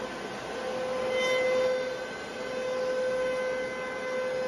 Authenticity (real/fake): real